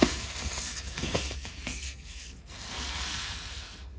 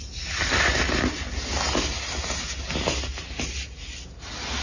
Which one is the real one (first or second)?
second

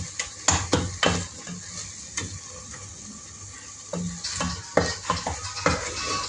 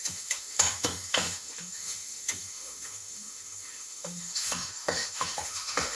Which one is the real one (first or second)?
first